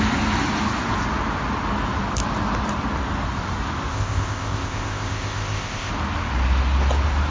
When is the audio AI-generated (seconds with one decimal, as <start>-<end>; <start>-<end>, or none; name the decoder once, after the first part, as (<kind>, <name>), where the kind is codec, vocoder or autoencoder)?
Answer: 3.9-5.9 (codec, ZipCodec)